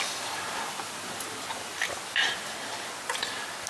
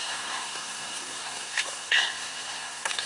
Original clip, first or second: first